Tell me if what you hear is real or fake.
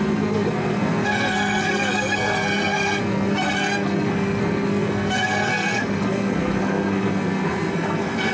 fake